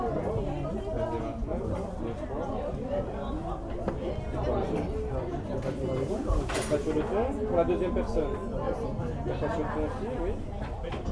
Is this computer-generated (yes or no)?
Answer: no